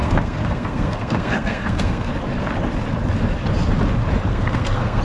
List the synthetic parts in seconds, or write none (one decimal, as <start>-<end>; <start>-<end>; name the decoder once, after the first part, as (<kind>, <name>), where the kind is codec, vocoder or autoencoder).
0.0-2.1 (codec, SNAC); 4.3-5.0